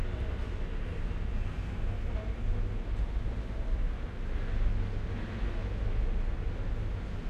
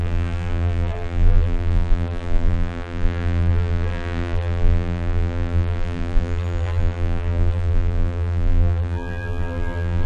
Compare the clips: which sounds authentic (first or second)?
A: first